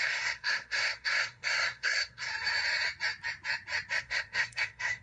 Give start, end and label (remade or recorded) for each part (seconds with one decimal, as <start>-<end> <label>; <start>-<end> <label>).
0.0-2.3 remade; 2.3-4.0 recorded; 4.0-5.0 remade